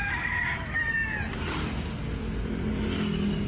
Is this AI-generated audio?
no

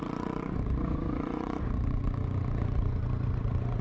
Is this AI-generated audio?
yes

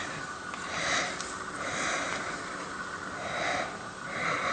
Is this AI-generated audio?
no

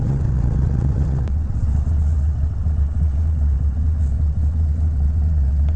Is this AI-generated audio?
yes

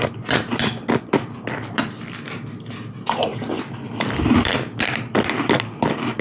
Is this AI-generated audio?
no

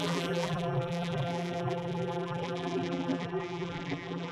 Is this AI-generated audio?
yes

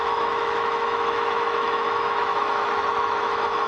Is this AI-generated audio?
yes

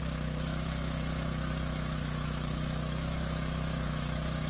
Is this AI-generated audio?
yes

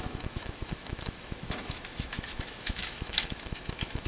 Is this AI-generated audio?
yes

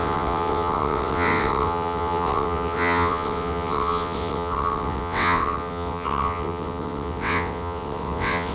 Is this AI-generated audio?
yes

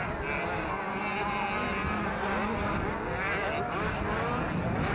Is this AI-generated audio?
no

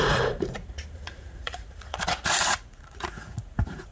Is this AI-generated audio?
yes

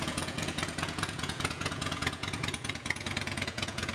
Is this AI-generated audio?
yes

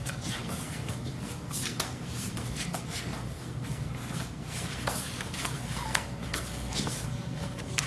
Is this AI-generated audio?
yes